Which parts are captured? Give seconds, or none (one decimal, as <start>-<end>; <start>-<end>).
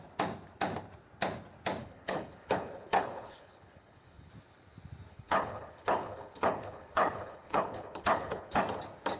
0.0-1.8; 4.3-5.1; 8.6-9.2